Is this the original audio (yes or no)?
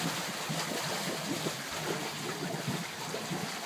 yes